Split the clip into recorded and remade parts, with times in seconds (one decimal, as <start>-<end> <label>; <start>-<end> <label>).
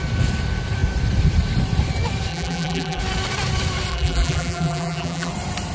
0.0-2.3 recorded; 2.3-3.0 remade; 3.0-3.9 recorded; 3.9-5.3 remade; 5.3-5.7 recorded